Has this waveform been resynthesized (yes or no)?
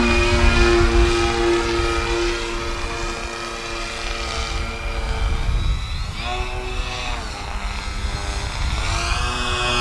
no